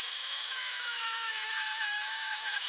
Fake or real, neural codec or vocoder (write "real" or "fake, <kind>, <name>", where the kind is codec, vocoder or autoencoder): fake, autoencoder, DAC-VAE